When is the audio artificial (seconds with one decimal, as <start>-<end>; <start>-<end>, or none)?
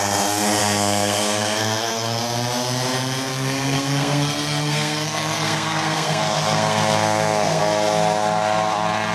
0.6-2.2; 3.3-7.6